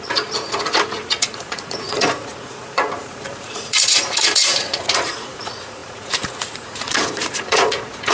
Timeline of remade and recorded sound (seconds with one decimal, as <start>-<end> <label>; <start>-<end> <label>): 0.0-8.1 remade